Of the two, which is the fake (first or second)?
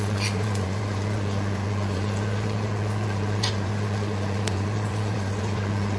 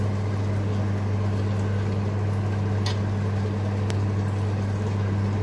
first